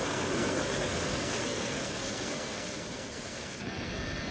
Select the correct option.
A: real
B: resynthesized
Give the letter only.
B